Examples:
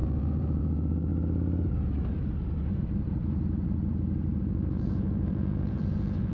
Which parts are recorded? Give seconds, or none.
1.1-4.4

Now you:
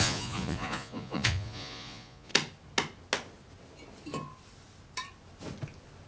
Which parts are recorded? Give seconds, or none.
2.3-6.1

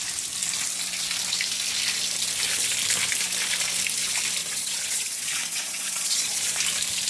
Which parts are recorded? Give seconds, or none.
0.0-4.4; 6.6-7.1

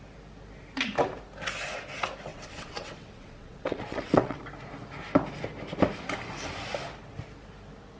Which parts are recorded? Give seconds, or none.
0.0-2.3; 4.4-8.0